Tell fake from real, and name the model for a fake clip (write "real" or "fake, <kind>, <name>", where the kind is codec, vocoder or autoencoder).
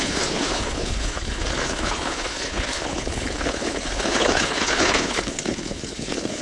fake, codec, HILCodec